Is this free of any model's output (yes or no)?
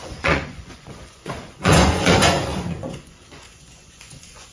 no